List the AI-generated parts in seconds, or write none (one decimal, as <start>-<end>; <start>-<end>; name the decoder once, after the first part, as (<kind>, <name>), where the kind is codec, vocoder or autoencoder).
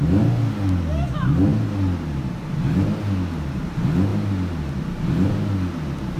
none